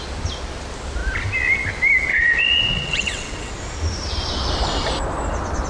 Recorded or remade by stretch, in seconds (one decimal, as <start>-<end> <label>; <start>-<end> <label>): 0.0-2.1 recorded; 2.1-3.5 remade; 3.5-5.7 recorded